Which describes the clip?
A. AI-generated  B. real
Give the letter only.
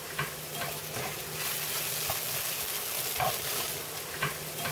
B